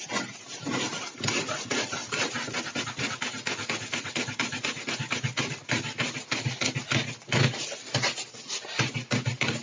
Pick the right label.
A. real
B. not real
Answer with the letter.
A